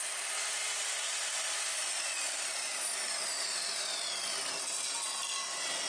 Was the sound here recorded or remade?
recorded